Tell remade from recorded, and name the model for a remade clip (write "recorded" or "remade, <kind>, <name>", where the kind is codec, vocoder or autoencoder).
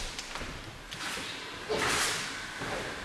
recorded